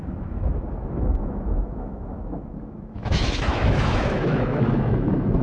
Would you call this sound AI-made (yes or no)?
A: yes